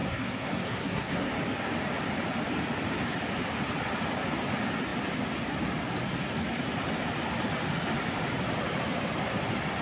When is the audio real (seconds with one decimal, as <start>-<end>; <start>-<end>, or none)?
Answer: 1.3-9.8